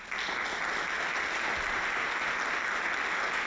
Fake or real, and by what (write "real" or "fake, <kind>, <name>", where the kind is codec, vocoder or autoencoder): real